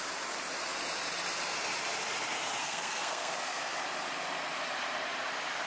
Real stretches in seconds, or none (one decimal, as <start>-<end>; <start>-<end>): 0.0-2.6; 3.6-5.7